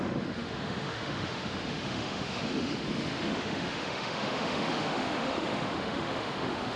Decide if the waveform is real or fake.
fake